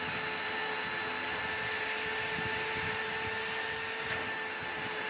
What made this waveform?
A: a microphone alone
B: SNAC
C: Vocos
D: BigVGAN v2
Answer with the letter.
A